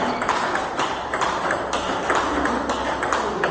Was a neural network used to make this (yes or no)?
no